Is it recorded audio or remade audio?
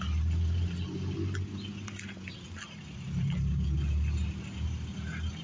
recorded